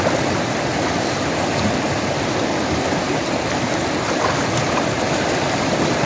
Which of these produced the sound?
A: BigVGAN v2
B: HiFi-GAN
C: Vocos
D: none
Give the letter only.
D